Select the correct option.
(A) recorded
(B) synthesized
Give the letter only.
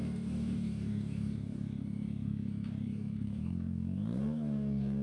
B